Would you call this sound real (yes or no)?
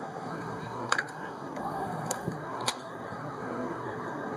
no